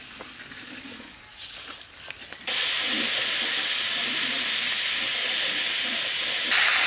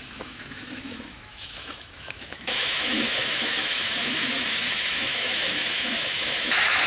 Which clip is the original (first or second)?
first